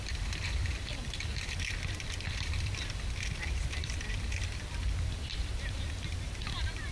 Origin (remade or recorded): remade